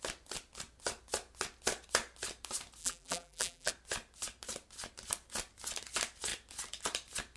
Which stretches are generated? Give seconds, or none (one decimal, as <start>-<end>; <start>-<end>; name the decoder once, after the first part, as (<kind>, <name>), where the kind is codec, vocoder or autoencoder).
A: 2.8-3.7 (vocoder, BigVGAN v2)